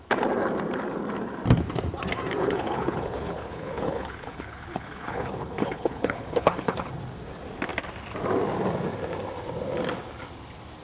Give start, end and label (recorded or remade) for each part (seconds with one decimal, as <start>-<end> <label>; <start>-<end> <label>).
0.0-2.4 recorded; 2.4-6.9 remade; 6.9-10.8 recorded